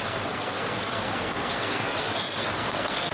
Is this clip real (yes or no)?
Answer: no